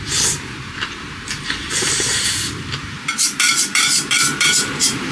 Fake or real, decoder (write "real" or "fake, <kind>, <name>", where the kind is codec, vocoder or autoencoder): fake, vocoder, BigVGAN v2